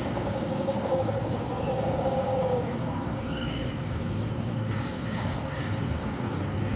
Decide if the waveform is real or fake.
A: fake